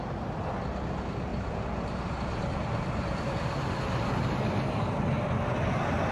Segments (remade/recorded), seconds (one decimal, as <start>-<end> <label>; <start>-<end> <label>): 0.0-1.3 recorded; 1.3-3.8 remade; 3.8-6.1 recorded